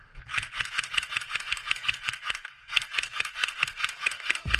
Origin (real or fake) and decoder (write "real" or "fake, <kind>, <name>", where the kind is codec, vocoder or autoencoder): fake, codec, SNAC